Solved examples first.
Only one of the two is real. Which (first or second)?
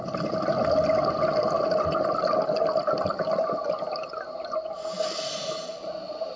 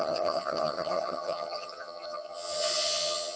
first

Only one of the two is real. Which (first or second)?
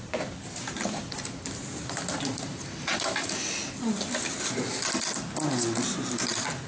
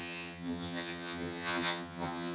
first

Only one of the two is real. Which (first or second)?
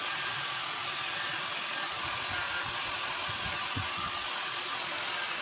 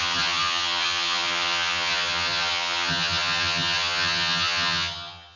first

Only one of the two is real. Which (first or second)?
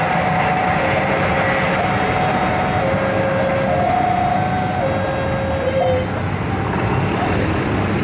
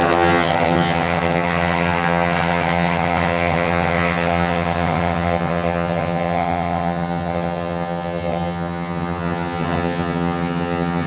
first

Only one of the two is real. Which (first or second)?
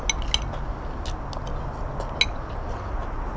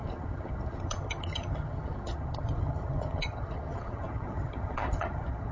first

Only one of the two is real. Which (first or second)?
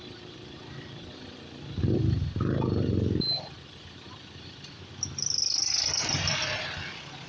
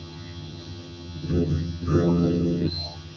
first